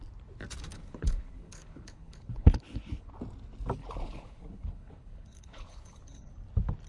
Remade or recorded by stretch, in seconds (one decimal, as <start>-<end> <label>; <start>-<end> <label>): 0.0-0.7 recorded; 0.7-3.1 remade; 3.1-3.8 recorded; 3.8-6.3 remade; 6.3-6.9 recorded